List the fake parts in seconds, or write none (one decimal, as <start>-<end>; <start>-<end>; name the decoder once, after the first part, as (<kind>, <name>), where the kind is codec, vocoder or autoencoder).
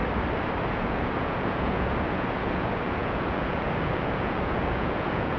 0.7-5.4 (vocoder, Vocos)